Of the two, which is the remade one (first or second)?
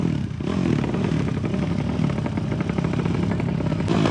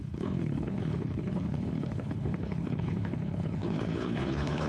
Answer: second